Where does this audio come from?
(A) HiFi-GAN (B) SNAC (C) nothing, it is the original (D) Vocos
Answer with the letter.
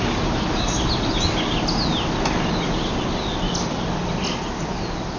C